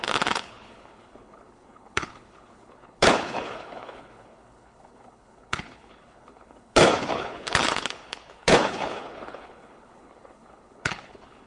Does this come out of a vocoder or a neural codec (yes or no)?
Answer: yes